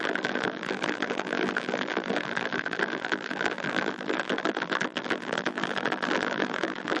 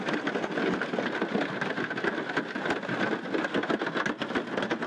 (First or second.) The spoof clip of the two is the first